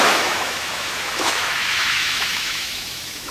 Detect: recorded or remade remade